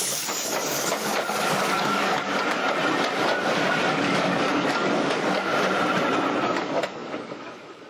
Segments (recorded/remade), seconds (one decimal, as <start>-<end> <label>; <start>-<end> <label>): 0.0-2.6 remade; 2.6-3.9 recorded; 3.9-5.5 remade; 5.5-6.3 recorded; 6.3-7.9 remade